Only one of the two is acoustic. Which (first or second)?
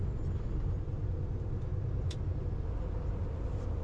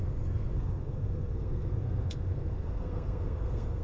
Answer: first